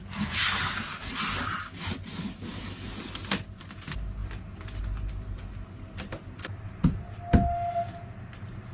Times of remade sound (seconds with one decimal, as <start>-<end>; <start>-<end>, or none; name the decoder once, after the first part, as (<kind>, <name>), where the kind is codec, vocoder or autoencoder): none